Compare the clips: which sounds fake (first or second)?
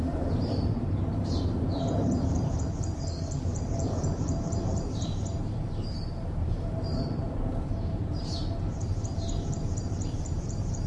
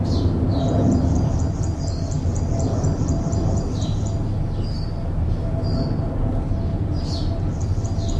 first